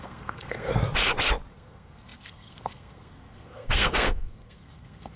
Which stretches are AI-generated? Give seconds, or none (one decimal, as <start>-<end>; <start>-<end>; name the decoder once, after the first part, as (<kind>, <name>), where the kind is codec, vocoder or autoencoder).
0.0-0.7 (codec, SNAC); 1.5-5.2